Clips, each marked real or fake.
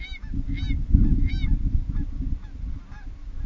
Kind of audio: real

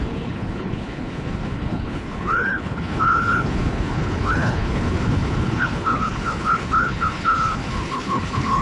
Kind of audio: fake